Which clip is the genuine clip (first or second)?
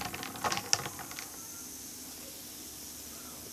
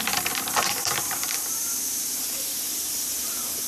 first